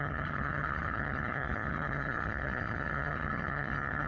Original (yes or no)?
no